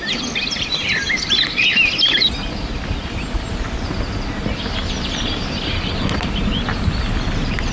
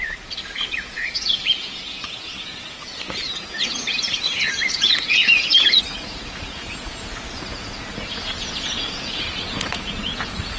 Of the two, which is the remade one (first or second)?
second